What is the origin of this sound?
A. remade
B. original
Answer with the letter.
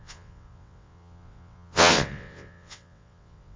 A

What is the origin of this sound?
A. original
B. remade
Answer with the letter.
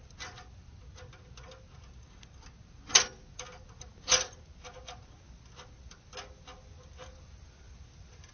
A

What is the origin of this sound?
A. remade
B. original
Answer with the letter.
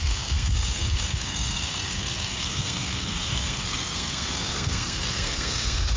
A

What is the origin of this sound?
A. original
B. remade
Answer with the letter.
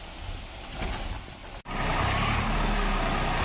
A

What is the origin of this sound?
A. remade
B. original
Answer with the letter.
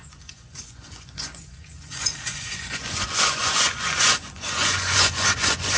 A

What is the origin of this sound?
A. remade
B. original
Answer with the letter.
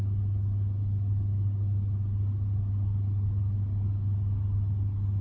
B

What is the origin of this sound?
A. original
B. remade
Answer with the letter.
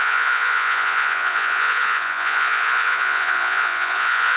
B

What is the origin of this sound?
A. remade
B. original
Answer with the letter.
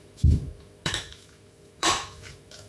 A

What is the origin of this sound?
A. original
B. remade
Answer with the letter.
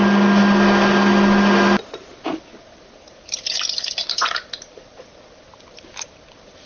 A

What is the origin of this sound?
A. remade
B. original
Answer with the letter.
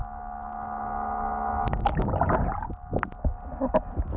B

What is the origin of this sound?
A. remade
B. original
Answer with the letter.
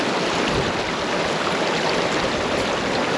B